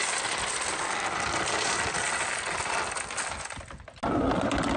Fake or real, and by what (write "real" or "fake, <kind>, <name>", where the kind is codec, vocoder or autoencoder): real